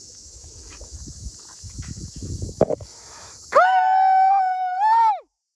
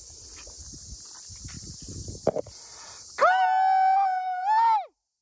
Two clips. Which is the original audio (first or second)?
second